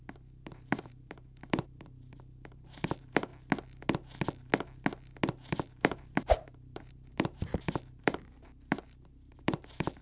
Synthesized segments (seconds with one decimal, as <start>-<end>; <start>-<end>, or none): 0.0-3.3; 5.5-10.0